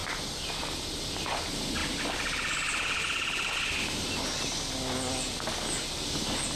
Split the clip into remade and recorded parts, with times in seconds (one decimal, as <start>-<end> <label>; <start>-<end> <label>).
0.0-1.8 recorded; 1.8-3.0 remade; 3.0-6.6 recorded